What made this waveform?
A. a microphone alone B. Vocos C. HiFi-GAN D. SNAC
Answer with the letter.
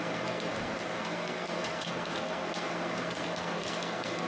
D